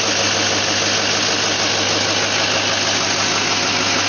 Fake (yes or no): no